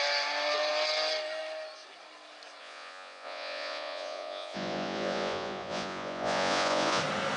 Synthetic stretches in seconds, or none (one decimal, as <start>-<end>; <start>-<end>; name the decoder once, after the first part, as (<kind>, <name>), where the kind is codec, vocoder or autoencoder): 2.6-7.0 (vocoder, Vocos)